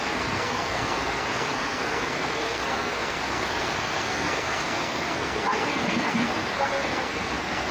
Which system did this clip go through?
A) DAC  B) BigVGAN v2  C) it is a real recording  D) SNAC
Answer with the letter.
D